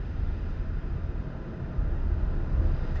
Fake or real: real